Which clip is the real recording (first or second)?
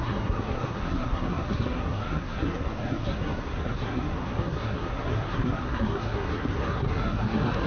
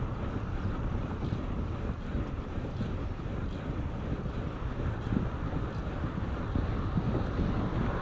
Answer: second